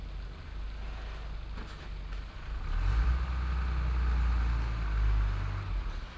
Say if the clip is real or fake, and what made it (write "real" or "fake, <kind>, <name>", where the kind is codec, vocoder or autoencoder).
real